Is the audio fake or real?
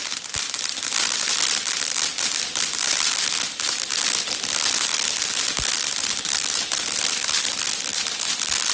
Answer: fake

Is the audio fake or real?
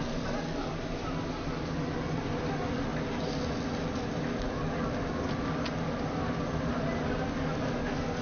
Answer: real